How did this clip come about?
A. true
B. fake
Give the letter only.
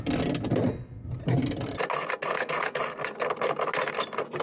A